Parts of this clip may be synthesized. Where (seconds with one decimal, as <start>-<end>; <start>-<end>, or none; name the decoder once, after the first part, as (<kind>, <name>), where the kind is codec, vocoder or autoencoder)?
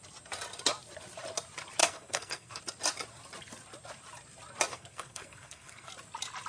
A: 1.8-2.6 (codec, SNAC); 4.7-5.9